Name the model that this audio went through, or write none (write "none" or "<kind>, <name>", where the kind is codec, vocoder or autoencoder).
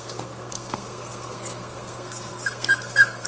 codec, SNAC